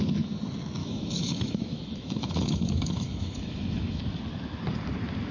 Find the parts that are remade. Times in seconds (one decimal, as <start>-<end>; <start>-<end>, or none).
0.8-4.0